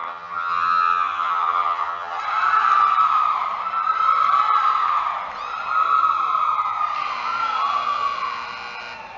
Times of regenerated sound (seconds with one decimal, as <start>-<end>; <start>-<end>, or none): 0.0-2.2